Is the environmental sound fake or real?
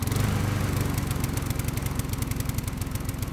real